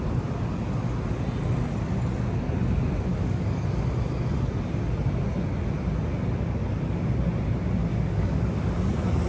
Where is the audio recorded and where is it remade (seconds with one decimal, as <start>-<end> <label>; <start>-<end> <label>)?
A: 0.0-3.1 recorded; 3.1-3.7 remade; 3.7-7.9 recorded; 7.9-8.7 remade; 8.7-9.3 recorded